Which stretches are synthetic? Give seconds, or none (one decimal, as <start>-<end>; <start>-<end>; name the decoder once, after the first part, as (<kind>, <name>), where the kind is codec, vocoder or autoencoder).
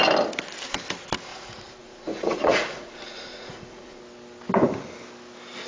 1.3-4.0 (vocoder, Vocos)